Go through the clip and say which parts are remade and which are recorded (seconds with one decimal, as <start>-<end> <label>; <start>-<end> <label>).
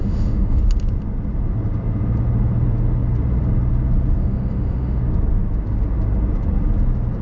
0.0-0.6 remade; 0.6-4.2 recorded; 4.2-5.0 remade; 5.0-7.2 recorded